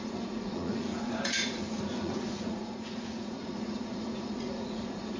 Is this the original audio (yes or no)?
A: no